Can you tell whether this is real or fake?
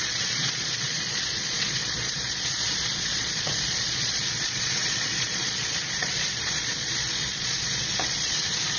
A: fake